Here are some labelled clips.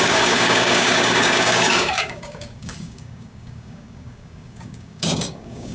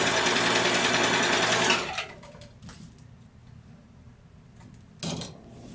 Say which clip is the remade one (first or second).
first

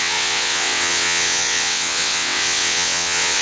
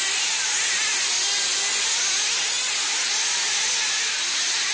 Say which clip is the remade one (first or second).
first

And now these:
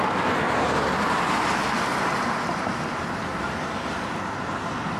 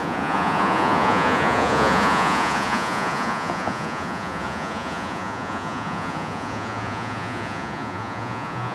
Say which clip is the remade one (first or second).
second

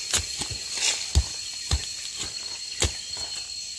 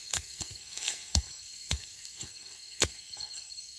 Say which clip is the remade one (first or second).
second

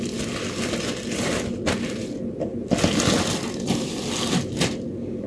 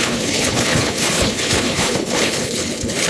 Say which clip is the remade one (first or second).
second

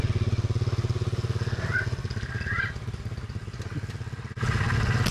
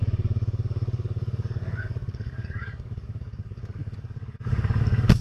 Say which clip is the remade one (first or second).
second